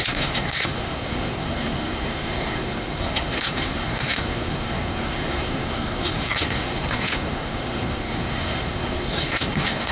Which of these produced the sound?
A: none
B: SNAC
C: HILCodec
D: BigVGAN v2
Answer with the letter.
B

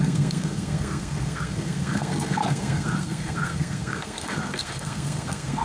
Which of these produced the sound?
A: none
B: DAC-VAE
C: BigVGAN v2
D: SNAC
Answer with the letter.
D